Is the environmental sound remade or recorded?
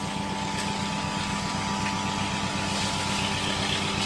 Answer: recorded